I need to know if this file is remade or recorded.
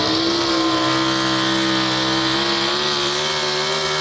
recorded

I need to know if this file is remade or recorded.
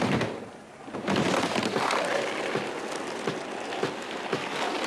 recorded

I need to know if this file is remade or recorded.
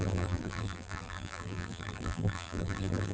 remade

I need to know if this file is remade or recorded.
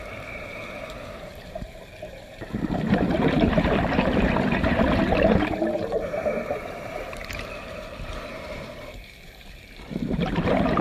remade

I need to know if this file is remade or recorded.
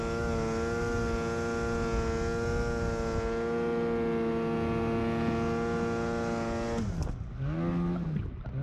recorded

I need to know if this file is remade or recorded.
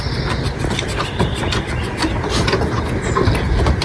recorded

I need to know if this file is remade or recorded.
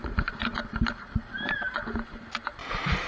recorded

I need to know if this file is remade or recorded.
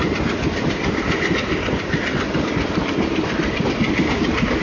remade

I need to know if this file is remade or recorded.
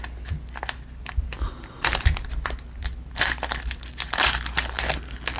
recorded